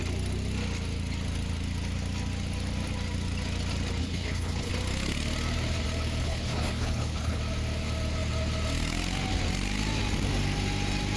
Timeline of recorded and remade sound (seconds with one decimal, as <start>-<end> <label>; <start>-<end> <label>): 0.0-4.0 recorded; 4.0-4.7 remade; 4.7-6.2 recorded; 6.2-7.4 remade; 7.4-11.2 recorded